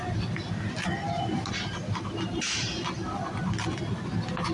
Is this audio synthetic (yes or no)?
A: no